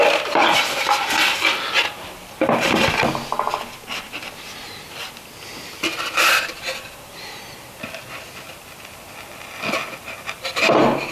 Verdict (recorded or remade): recorded